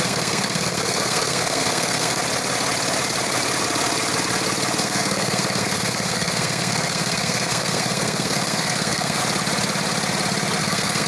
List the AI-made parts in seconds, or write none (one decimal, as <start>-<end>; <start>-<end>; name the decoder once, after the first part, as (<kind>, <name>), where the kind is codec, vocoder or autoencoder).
0.0-2.2 (codec, SNAC); 4.8-9.2; 10.6-11.1